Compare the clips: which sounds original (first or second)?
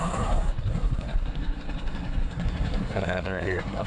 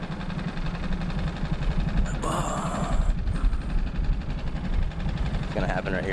second